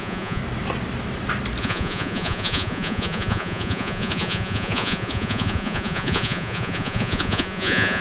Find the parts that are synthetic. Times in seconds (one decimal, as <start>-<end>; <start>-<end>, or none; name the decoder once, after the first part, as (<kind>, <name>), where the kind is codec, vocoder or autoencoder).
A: 0.0-0.4 (vocoder, Vocos); 1.6-8.0